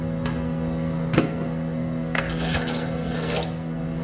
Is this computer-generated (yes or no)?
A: yes